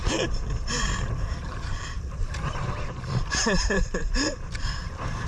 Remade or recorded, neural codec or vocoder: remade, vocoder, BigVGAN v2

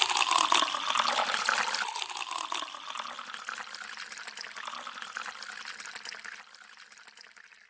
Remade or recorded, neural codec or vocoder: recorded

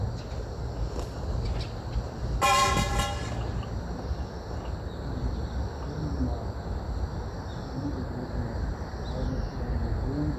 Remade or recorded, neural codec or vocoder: recorded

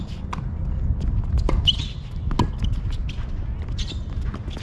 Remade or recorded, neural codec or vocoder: recorded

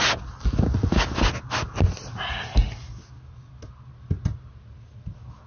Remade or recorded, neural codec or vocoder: recorded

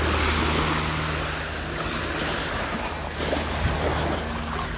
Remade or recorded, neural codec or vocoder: recorded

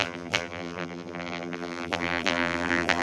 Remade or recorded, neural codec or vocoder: remade, vocoder, BigVGAN v2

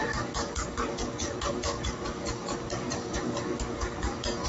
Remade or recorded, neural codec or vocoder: remade, codec, DAC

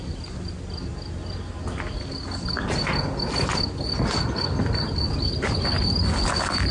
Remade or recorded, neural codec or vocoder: recorded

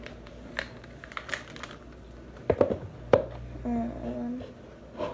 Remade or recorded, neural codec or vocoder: recorded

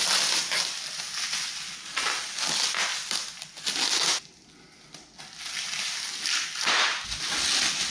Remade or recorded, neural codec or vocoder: recorded